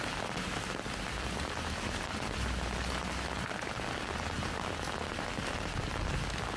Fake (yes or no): no